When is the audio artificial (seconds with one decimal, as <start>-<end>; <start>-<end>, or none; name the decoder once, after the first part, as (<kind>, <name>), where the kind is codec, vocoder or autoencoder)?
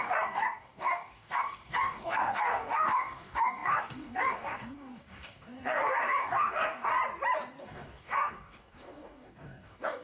0.0-7.0 (codec, DAC); 7.6-10.0